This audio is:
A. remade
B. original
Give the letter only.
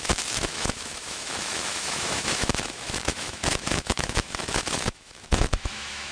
A